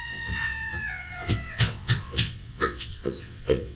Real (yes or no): no